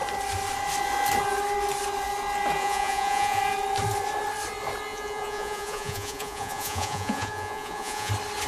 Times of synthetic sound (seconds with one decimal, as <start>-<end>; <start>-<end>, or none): 2.6-3.4; 4.9-8.1